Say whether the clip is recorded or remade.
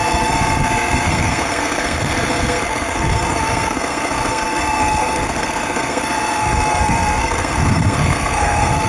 remade